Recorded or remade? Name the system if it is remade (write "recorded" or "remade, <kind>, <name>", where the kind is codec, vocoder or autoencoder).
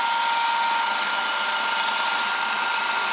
recorded